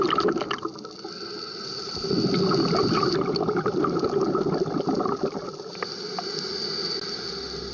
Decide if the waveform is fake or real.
real